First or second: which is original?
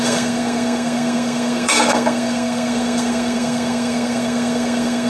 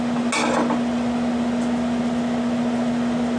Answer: second